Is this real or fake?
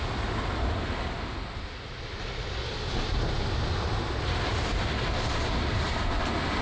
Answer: real